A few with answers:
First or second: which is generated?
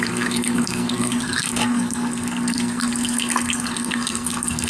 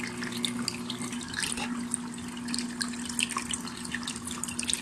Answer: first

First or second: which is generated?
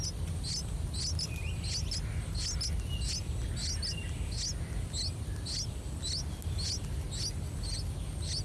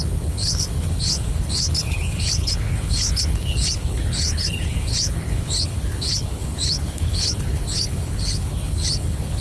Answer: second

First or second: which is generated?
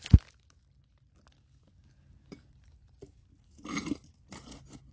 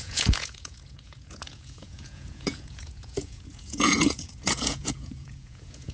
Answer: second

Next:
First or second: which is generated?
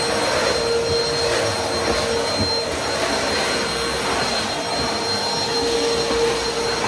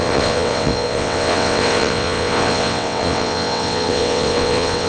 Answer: second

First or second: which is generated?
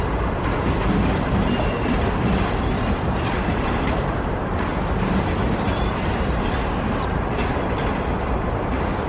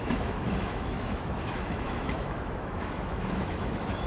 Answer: second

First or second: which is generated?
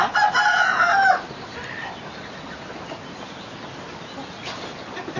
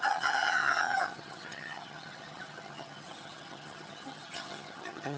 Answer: second